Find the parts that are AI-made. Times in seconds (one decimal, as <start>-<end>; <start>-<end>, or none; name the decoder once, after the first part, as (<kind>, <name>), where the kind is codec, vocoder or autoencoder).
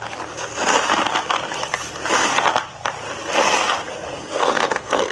4.2-5.1 (codec, SNAC)